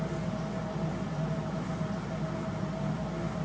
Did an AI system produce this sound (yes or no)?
no